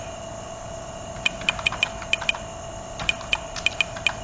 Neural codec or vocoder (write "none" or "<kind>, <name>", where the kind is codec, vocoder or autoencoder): none